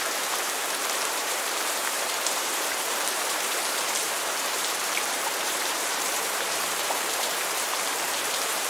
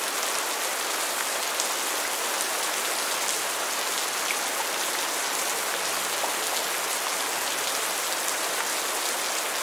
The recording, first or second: second